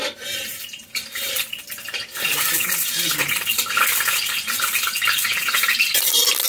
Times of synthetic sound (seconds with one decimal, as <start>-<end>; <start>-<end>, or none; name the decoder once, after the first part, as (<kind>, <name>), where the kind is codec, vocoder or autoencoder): none